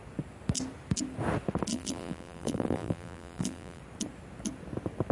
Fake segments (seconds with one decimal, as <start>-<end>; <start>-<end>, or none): 1.7-3.8